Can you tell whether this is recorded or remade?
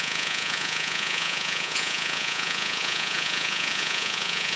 remade